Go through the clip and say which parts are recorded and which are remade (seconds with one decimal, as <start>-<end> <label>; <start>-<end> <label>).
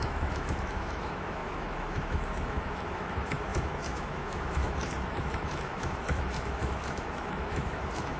0.0-8.2 remade